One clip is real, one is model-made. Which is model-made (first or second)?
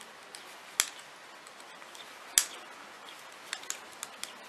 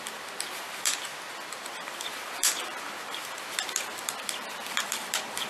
second